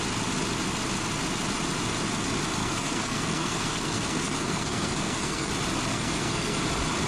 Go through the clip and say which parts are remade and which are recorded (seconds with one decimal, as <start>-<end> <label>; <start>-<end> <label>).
0.0-2.6 recorded; 2.6-5.5 remade; 5.5-5.9 recorded; 5.9-6.6 remade; 6.6-7.1 recorded